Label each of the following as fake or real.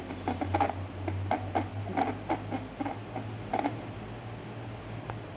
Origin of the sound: real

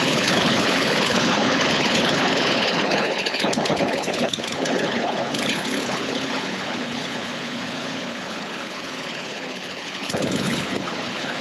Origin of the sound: fake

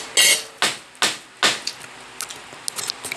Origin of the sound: real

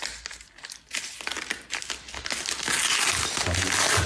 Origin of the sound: real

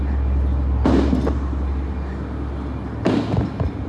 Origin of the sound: real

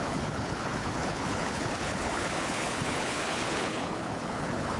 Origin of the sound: fake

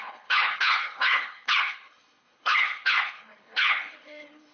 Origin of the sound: fake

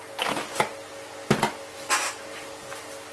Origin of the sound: real